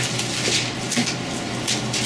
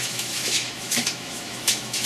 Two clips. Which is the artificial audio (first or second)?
second